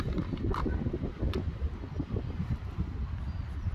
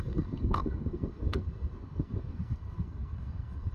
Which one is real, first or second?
first